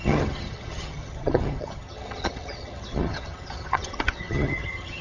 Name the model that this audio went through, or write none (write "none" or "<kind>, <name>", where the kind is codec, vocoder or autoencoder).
vocoder, HiFi-GAN